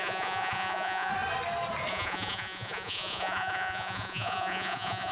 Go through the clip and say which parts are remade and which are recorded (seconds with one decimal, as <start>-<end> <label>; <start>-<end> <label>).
0.0-1.1 remade; 1.1-1.9 recorded; 1.9-5.1 remade